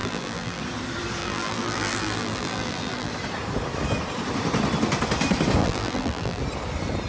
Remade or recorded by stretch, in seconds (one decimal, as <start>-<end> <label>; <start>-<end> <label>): 0.0-0.6 remade; 0.6-1.2 recorded; 1.2-3.1 remade; 3.1-5.6 recorded; 5.6-6.4 remade; 6.4-7.1 recorded